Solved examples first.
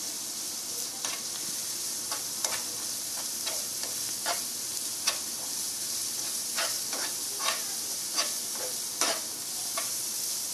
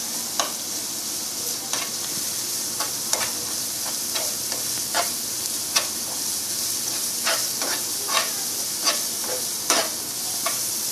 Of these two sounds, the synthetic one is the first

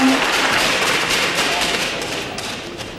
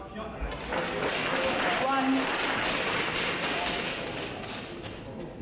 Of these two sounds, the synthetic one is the first